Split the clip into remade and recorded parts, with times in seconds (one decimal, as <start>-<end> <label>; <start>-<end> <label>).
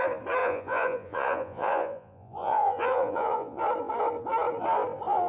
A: 0.0-0.4 recorded; 0.4-3.6 remade; 3.6-5.3 recorded